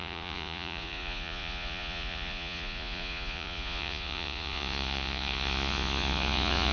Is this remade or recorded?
remade